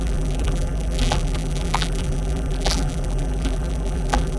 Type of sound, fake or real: fake